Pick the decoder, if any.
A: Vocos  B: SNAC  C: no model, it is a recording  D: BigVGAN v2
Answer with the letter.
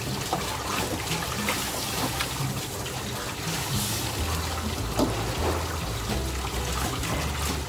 C